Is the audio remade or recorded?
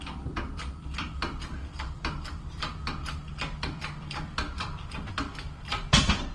remade